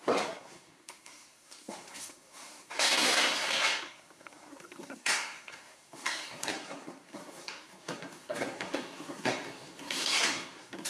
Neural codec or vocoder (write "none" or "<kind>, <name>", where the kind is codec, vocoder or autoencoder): codec, SNAC